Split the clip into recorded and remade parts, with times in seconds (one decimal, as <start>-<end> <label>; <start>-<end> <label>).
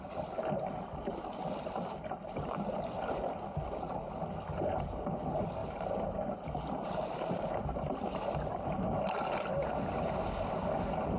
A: 0.0-11.2 recorded